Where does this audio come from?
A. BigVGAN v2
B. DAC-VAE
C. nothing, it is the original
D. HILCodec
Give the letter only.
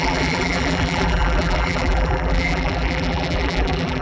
A